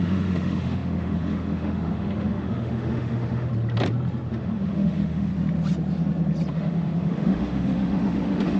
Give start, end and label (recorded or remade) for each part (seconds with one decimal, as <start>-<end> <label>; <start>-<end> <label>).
0.0-3.5 remade; 3.5-4.3 recorded; 4.3-5.3 remade; 5.3-6.5 recorded; 6.5-8.6 remade